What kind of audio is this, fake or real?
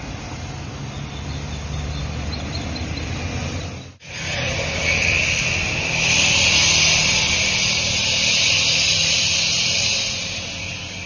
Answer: real